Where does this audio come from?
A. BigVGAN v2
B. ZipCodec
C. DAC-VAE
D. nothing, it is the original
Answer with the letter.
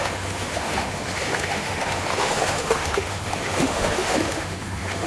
C